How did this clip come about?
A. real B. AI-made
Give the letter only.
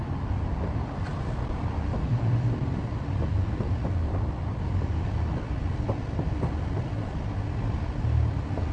A